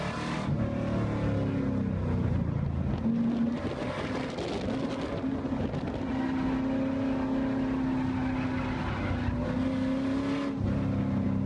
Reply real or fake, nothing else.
real